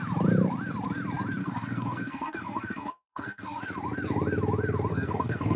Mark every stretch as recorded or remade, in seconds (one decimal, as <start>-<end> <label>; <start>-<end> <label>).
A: 0.0-1.4 recorded; 1.4-3.6 remade; 3.6-4.9 recorded; 4.9-5.6 remade